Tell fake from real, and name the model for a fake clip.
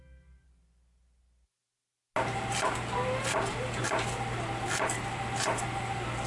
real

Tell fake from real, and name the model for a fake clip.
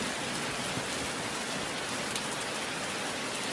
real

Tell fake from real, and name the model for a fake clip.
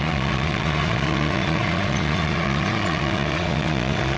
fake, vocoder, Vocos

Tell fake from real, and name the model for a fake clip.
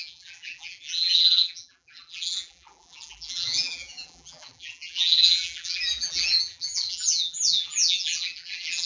fake, vocoder, BigVGAN v2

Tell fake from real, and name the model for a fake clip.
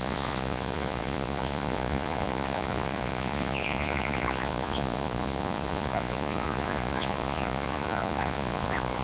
fake, vocoder, Vocos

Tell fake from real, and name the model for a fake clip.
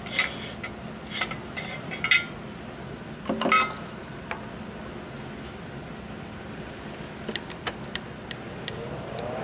real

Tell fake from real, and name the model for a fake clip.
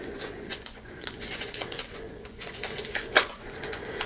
fake, vocoder, Vocos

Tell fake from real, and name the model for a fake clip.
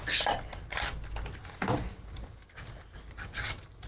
real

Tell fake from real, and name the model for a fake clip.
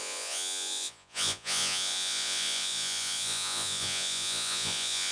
fake, vocoder, Vocos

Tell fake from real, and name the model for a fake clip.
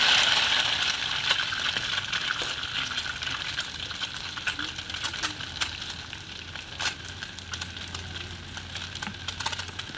real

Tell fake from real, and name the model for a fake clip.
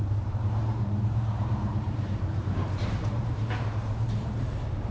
fake, vocoder, BigVGAN v2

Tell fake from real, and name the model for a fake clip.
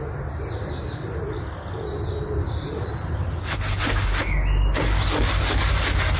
real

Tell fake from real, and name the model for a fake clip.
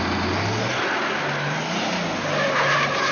real